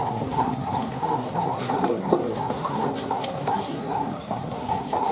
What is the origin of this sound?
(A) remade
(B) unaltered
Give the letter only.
A